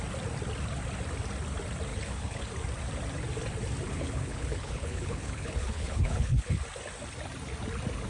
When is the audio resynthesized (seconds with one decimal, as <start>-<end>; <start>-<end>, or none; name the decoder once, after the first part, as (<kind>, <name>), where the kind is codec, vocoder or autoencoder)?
1.9-2.5 (codec, HILCodec); 3.9-6.6

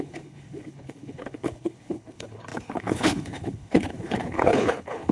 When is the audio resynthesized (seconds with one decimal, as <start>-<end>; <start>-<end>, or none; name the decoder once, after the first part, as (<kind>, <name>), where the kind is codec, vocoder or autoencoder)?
0.0-5.1 (codec, HILCodec)

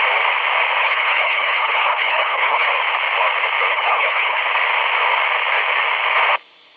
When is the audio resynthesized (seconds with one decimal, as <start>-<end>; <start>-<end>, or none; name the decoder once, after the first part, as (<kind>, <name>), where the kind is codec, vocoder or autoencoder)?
0.8-2.7 (codec, HILCodec); 3.7-4.4

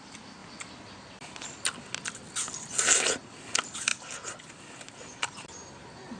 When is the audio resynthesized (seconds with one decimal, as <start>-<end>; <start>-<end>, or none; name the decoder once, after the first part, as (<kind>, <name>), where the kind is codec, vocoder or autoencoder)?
none